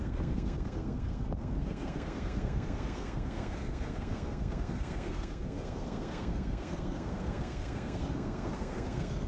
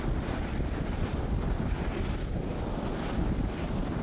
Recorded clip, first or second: second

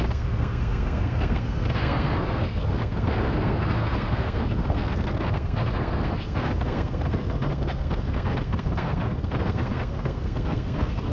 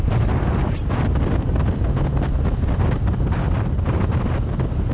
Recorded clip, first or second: second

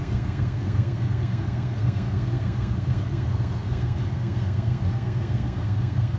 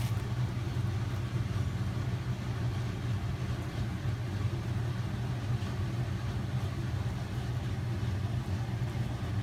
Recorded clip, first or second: second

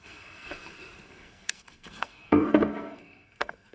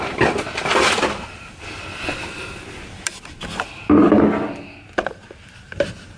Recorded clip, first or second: second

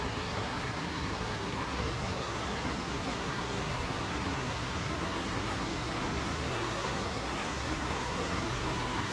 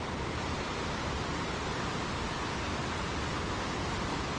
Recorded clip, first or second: second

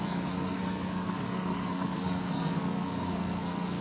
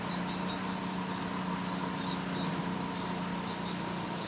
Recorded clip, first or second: second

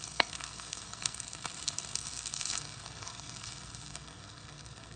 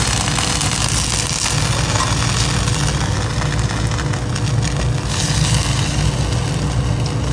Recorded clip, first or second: second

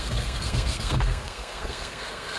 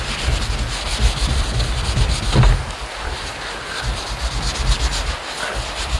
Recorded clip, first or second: second